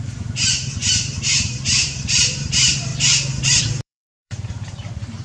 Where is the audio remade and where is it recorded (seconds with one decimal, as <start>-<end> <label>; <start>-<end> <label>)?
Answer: 0.0-2.9 remade; 2.9-3.6 recorded; 3.6-5.2 remade